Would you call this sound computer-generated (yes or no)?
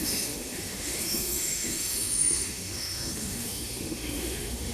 yes